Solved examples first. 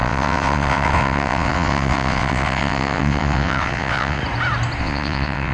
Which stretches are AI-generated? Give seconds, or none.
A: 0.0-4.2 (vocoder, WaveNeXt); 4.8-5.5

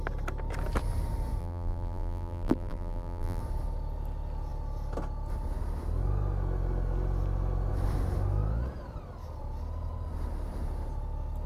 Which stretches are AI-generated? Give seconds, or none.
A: 1.4-3.4 (vocoder, BigVGAN v2)

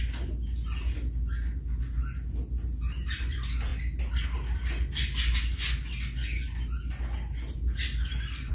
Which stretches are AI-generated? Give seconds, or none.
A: none

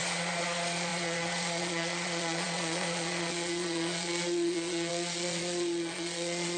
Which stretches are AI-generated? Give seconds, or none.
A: 0.0-6.6 (vocoder, Vocos)

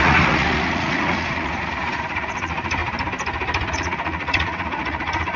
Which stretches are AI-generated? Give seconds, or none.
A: 0.0-2.8 (vocoder, Vocos); 3.7-5.4